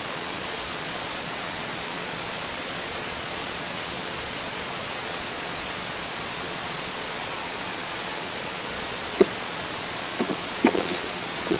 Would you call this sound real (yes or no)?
no